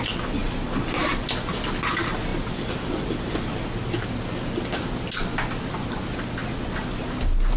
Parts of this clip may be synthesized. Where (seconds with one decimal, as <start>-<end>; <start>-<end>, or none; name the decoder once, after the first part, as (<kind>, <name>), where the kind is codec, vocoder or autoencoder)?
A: none